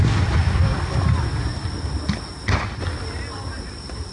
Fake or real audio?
real